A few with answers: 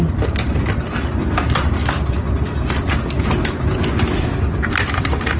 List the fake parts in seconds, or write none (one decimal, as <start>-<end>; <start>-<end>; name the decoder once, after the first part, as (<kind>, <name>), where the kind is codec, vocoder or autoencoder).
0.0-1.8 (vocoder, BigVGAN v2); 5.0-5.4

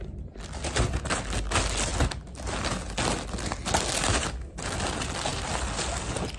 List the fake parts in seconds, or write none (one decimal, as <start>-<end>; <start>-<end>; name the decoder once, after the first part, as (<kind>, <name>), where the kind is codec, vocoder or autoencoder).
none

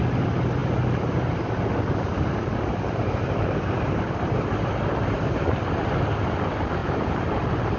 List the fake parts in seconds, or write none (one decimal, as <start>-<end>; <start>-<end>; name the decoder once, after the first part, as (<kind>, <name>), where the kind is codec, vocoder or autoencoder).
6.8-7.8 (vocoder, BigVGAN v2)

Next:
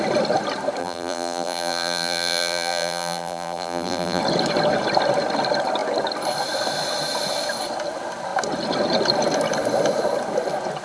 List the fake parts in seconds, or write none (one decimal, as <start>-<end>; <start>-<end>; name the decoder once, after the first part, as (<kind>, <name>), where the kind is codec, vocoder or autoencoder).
0.8-4.2 (vocoder, BigVGAN v2)

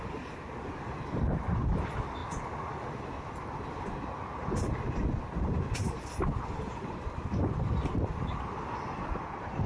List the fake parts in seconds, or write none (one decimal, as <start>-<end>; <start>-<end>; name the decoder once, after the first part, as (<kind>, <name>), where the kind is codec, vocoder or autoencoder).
none